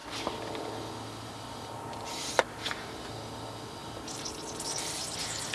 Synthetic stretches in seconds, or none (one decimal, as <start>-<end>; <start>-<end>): none